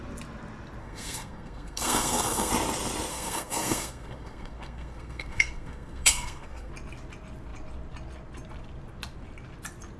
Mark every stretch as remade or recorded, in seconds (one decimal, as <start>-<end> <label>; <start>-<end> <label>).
0.0-0.8 recorded; 0.8-2.5 remade; 2.5-3.1 recorded; 3.1-6.7 remade; 6.7-10.0 recorded